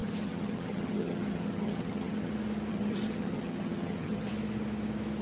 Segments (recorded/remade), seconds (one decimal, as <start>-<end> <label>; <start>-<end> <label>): 0.0-2.3 remade; 2.3-2.7 recorded; 2.7-4.3 remade; 4.3-5.2 recorded

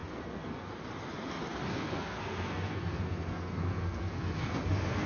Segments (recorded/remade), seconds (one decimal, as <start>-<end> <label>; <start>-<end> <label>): 0.0-0.7 remade; 0.7-1.7 recorded; 1.7-5.1 remade

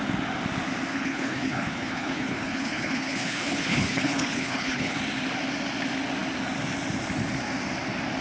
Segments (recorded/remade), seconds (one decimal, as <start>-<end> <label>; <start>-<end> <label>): 0.0-0.9 recorded; 0.9-5.0 remade; 5.0-8.2 recorded

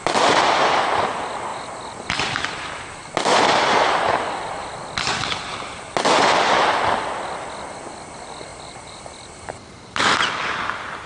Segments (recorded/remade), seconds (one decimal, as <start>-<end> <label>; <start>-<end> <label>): 0.0-8.5 recorded; 8.5-10.0 remade; 10.0-11.1 recorded

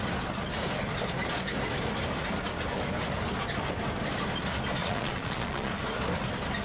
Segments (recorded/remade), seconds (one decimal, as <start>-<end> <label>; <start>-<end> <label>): 0.0-4.8 recorded; 4.8-5.7 remade; 5.7-6.6 recorded